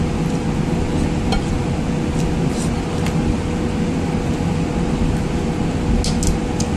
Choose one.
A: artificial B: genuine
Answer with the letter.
B